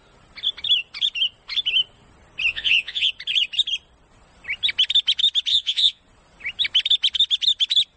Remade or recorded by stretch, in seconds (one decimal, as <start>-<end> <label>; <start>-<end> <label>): 0.0-2.5 recorded; 2.5-3.1 remade; 3.1-5.5 recorded; 5.5-6.0 remade; 6.0-8.0 recorded